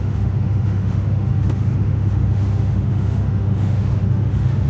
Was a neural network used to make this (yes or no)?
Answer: yes